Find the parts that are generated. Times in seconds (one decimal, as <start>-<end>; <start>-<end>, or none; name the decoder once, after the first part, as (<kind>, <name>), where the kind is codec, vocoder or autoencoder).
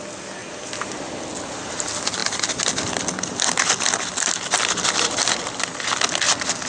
none